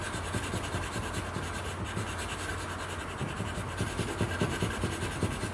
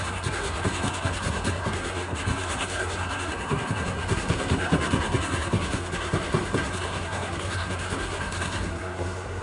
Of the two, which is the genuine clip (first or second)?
first